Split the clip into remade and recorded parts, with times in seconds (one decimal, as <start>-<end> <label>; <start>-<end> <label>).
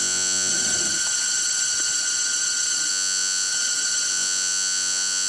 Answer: 0.0-0.5 remade; 0.5-2.9 recorded; 2.9-3.5 remade; 3.5-4.1 recorded; 4.1-5.3 remade